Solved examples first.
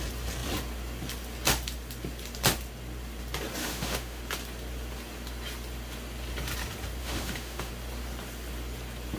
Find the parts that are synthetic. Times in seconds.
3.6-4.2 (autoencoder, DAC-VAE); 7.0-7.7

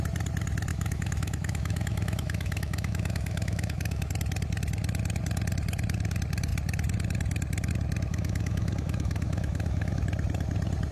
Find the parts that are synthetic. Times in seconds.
0.7-4.1 (autoencoder, DAC-VAE); 8.1-10.0